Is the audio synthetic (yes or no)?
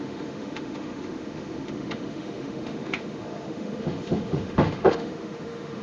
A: yes